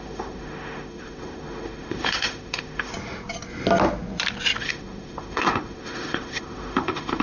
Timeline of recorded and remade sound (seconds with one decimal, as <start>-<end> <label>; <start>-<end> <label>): 0.0-2.9 remade; 2.9-4.6 recorded; 4.6-7.2 remade